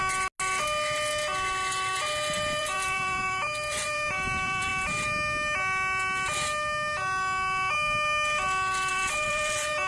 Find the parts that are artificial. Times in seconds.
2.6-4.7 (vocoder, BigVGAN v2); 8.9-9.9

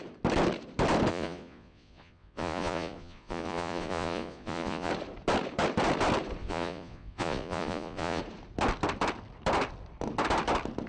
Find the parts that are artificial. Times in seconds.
1.1-4.9 (vocoder, Vocos); 6.4-8.2

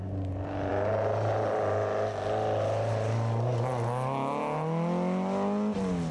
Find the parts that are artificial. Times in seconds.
none

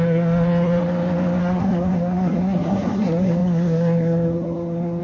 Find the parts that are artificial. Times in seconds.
0.0-0.8 (codec, SNAC); 1.4-5.0

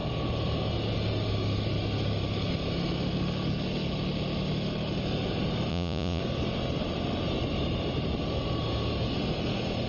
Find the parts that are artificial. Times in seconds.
5.7-6.2 (vocoder, Vocos)

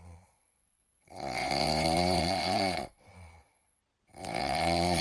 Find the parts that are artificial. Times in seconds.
0.0-1.4 (vocoder, Vocos); 2.2-3.8; 4.4-5.0

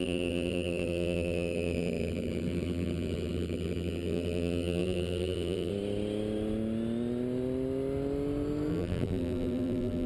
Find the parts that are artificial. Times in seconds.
0.0-5.7 (vocoder, BigVGAN v2); 8.7-10.1

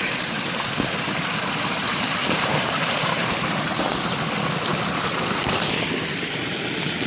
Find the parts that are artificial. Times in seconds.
1.9-3.9 (vocoder, BigVGAN v2)